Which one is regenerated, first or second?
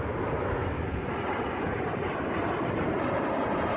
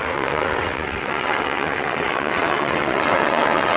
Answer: second